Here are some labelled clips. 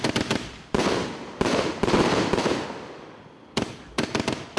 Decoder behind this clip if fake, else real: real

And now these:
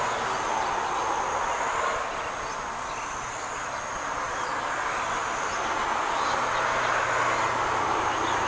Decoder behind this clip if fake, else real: real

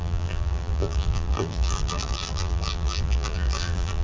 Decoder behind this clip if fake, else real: fake, vocoder, BigVGAN v2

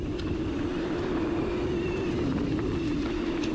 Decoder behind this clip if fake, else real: real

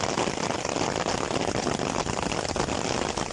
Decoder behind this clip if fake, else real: real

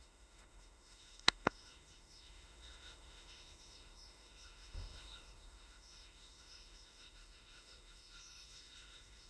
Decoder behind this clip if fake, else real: fake, autoencoder, DAC-VAE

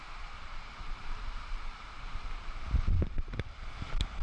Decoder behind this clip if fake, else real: fake, vocoder, BigVGAN v2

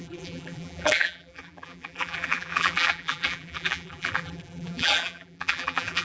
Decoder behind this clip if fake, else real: fake, vocoder, BigVGAN v2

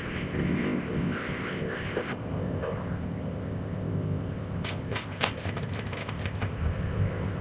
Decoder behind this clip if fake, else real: fake, codec, ZipCodec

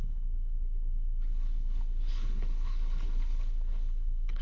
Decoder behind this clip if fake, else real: fake, codec, HILCodec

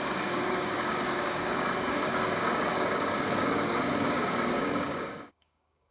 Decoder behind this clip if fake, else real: fake, codec, DAC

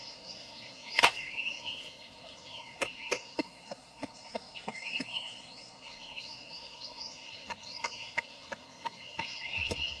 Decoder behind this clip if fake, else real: fake, codec, SNAC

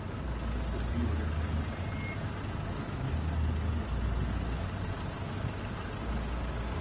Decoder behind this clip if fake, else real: real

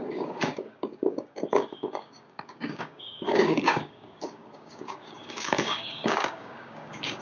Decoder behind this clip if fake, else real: fake, codec, DAC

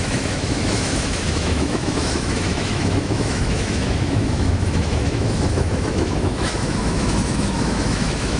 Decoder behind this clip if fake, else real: fake, autoencoder, DAC-VAE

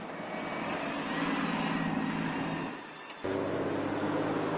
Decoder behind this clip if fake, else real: real